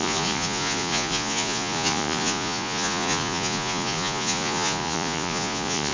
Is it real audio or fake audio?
fake